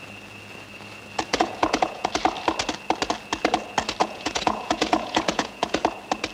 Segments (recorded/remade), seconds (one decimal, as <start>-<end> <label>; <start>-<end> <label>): 0.0-1.3 recorded; 1.3-2.1 remade; 2.1-4.0 recorded; 4.0-5.8 remade; 5.8-6.3 recorded